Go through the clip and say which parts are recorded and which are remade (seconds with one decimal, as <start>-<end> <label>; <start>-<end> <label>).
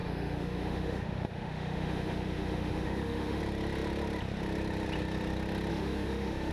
0.0-3.4 remade; 3.4-5.7 recorded; 5.7-6.5 remade